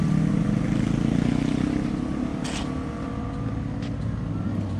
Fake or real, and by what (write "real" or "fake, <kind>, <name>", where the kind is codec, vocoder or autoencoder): real